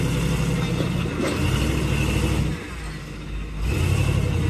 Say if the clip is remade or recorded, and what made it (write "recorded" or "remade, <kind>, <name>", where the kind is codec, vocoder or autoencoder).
recorded